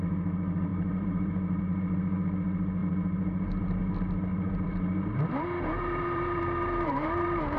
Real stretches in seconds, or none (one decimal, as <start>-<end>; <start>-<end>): 0.0-0.7; 1.6-2.8; 3.8-4.3